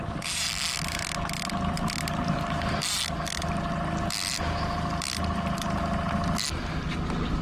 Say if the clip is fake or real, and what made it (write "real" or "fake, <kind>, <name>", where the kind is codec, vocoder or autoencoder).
real